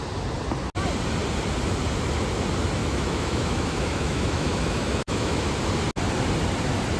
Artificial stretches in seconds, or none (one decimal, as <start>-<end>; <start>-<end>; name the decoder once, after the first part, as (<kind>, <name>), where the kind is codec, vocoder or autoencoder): 2.8-5.5 (autoencoder, DAC-VAE)